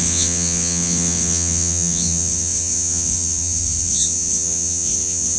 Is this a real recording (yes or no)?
no